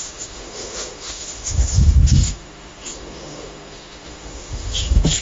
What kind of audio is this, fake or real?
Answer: fake